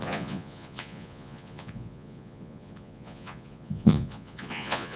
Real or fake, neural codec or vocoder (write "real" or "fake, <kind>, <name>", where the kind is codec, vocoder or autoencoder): fake, vocoder, Vocos